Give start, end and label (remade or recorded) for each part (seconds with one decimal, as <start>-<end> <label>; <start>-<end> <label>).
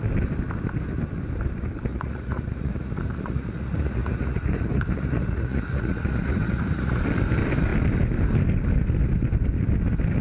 0.0-1.9 recorded; 1.9-7.0 remade; 7.0-10.2 recorded